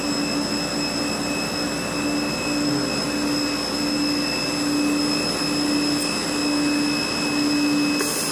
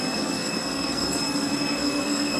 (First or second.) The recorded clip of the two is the first